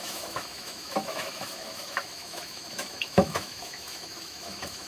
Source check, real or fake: fake